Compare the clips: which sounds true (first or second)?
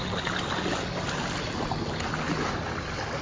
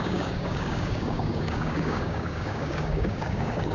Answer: first